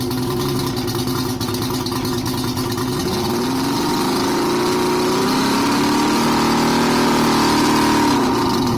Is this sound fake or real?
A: real